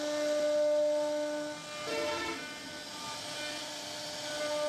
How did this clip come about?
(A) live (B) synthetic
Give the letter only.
A